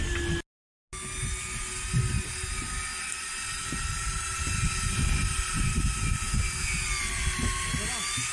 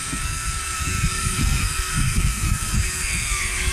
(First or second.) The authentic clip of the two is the first